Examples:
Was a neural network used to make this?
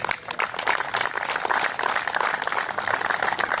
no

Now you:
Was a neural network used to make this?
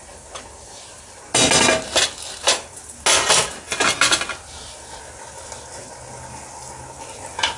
no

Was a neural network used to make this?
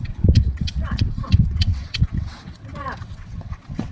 yes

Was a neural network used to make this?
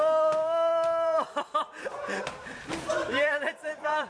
yes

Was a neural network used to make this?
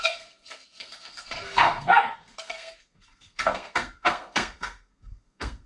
yes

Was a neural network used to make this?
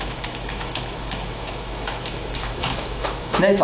yes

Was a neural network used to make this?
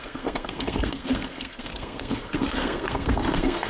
yes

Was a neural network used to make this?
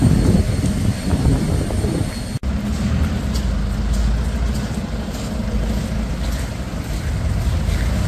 no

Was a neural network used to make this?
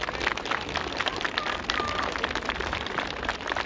no